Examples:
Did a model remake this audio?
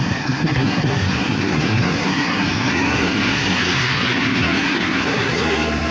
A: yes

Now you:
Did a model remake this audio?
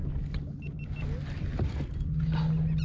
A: no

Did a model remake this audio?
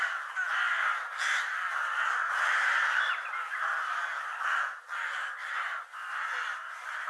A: no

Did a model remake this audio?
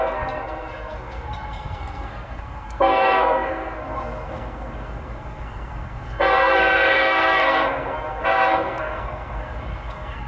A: yes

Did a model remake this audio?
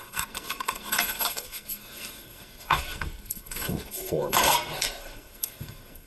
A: yes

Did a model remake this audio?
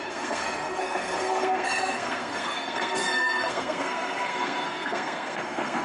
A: yes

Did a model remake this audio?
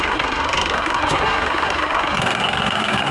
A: yes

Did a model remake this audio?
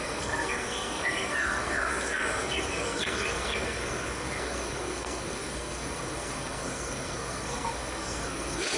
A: yes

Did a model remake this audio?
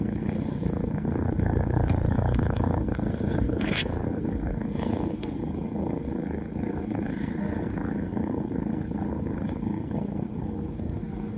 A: yes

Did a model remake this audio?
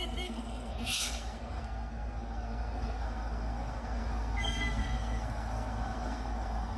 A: yes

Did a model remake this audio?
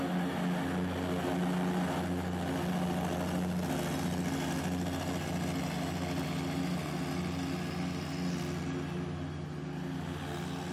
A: no